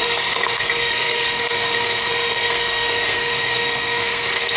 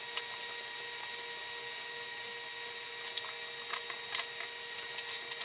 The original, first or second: second